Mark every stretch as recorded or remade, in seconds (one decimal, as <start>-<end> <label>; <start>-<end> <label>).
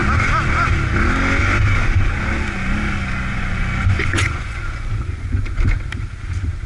0.0-3.3 recorded; 3.3-5.6 remade; 5.6-6.7 recorded